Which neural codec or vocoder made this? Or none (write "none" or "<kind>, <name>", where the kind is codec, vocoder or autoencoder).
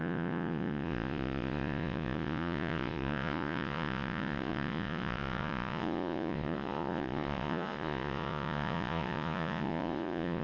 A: vocoder, Vocos